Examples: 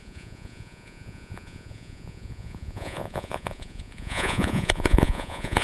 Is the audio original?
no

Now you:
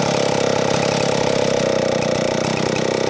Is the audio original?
yes